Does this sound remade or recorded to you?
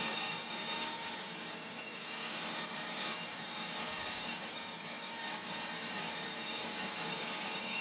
remade